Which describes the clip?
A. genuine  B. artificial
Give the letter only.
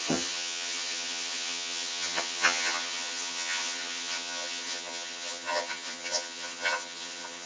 B